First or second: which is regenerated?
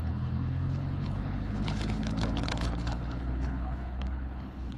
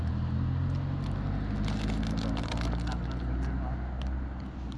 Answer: first